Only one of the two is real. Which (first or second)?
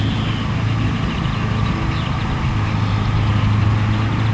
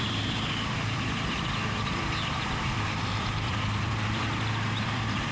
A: first